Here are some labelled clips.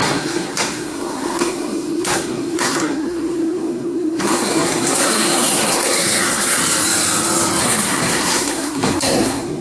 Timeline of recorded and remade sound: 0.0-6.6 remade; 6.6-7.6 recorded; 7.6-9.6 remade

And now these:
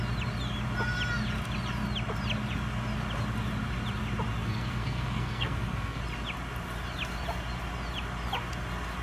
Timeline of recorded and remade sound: 0.0-4.4 recorded; 4.4-6.0 remade; 6.0-9.0 recorded

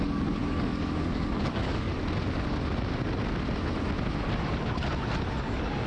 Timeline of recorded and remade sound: 0.0-1.9 remade; 1.9-5.4 recorded; 5.4-5.9 remade

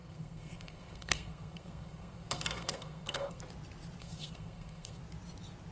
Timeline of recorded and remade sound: 0.0-3.4 remade; 3.4-4.0 recorded; 4.0-5.0 remade; 5.0-5.7 recorded

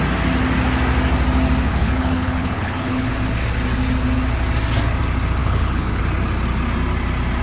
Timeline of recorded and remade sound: 0.0-1.7 recorded; 1.7-3.1 remade; 3.1-5.4 recorded; 5.4-6.0 remade; 6.0-7.4 recorded